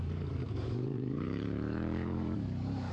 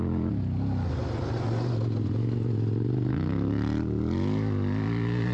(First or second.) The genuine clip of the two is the second